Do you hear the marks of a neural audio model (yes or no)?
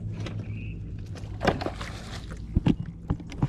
no